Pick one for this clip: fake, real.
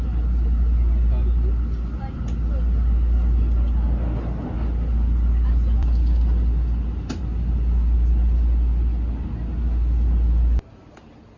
real